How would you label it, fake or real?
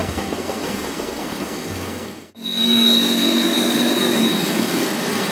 fake